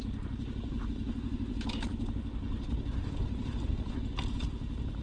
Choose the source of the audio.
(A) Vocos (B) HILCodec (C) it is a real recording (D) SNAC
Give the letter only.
C